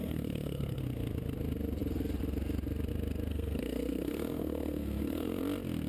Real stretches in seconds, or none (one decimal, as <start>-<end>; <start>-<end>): 0.8-3.3; 5.4-5.9